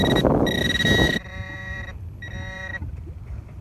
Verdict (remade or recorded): remade